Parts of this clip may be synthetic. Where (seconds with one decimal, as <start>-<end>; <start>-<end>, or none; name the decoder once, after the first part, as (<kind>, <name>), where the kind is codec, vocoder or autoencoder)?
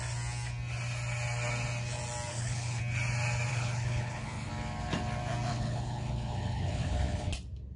2.3-2.8 (codec, HILCodec); 3.5-4.5; 5.5-7.3